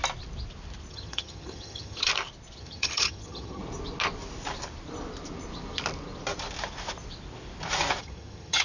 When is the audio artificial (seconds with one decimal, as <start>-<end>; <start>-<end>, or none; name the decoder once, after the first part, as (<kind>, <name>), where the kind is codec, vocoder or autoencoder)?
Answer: 0.9-2.1 (vocoder, HiFi-GAN); 2.6-3.6; 8.0-8.6

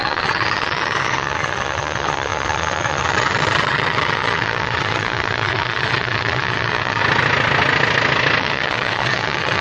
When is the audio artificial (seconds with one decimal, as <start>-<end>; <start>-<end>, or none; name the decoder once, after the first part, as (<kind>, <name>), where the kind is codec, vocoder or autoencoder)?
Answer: 0.0-7.0 (vocoder, WaveNeXt); 8.4-9.6

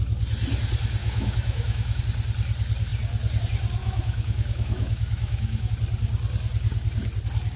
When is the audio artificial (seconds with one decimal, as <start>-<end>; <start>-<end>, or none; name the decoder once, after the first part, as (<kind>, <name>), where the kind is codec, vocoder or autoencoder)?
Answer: 1.0-2.0 (autoencoder, DAC-VAE); 3.8-5.7

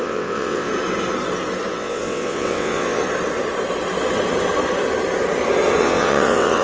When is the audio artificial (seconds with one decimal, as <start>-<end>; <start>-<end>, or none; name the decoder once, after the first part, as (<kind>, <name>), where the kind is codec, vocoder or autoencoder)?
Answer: 0.0-0.7 (vocoder, WaveNeXt); 1.7-3.0; 5.8-6.6

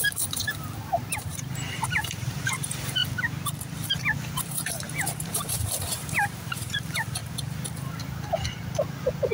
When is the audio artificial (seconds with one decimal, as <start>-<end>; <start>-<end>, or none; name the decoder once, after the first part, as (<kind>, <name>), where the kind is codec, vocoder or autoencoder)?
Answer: 0.0-3.0 (vocoder, BigVGAN v2); 3.9-7.2